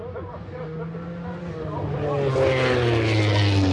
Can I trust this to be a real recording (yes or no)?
yes